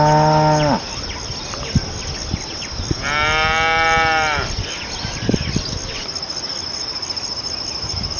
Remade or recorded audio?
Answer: recorded